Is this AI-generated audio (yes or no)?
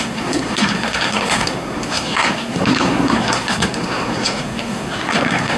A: yes